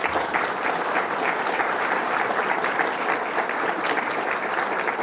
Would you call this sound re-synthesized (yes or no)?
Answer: no